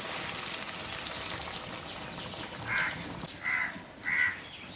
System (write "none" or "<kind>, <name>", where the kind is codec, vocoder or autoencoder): none